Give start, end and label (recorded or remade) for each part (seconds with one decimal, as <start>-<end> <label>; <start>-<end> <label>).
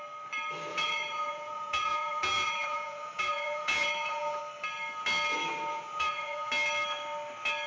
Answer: 0.0-0.7 recorded; 0.7-4.4 remade; 4.4-5.7 recorded; 5.7-6.5 remade; 6.5-7.7 recorded